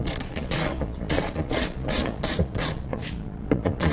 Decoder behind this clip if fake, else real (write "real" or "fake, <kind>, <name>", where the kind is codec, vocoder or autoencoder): fake, vocoder, Vocos